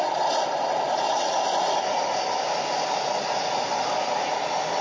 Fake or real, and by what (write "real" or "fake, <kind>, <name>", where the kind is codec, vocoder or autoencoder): real